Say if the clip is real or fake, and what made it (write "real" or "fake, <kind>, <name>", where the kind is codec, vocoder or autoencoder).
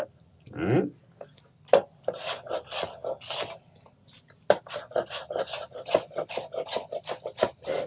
real